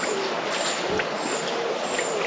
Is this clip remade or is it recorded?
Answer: recorded